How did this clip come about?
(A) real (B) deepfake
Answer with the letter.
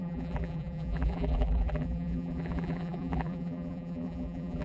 B